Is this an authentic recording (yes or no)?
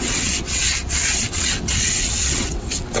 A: no